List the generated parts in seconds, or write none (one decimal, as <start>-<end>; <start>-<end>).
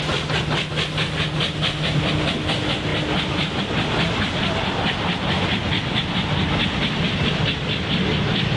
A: none